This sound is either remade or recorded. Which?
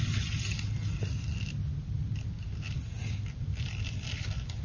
recorded